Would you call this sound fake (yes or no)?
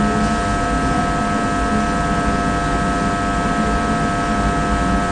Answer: no